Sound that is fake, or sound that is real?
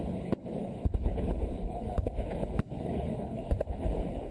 fake